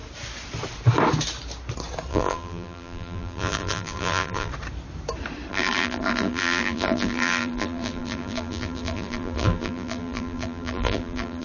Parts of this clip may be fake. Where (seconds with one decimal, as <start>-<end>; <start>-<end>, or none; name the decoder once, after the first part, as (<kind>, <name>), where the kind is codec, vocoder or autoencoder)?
2.1-4.5 (vocoder, BigVGAN v2); 5.5-11.4